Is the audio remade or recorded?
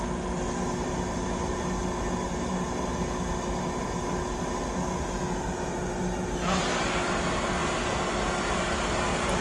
recorded